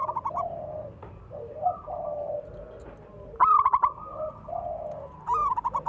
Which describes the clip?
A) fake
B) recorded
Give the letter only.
B